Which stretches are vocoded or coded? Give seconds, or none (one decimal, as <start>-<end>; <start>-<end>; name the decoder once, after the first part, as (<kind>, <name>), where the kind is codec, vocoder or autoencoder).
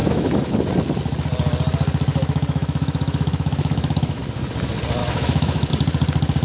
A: 0.0-0.5 (autoencoder, DAC-VAE); 2.1-4.2; 5.0-5.7